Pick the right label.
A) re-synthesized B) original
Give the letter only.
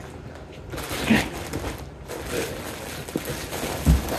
B